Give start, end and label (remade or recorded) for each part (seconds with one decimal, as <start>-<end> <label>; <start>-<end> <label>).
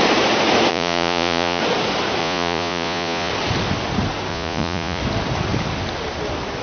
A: 0.0-0.7 recorded; 0.7-1.6 remade; 1.6-2.2 recorded; 2.2-3.3 remade; 3.3-4.3 recorded; 4.3-5.0 remade; 5.0-6.6 recorded